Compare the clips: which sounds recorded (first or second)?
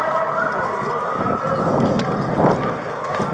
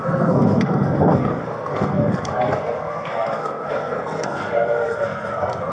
first